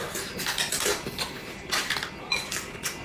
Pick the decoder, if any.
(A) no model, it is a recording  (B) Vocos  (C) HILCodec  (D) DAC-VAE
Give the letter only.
A